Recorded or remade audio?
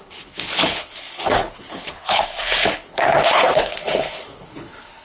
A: remade